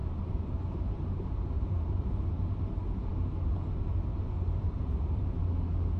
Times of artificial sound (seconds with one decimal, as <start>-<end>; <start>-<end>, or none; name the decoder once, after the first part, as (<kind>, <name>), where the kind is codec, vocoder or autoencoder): 0.0-2.6 (vocoder, BigVGAN v2)